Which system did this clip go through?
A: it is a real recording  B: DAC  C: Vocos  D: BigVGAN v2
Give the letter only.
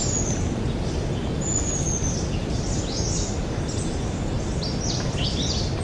A